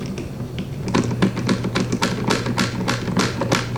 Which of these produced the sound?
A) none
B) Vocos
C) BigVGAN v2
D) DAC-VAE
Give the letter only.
A